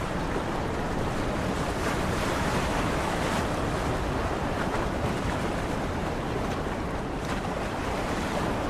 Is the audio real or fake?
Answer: real